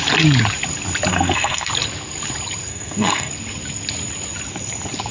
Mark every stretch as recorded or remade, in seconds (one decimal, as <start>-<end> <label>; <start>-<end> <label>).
0.0-1.1 recorded; 1.1-1.7 remade; 1.7-2.7 recorded; 2.7-3.3 remade; 3.3-5.1 recorded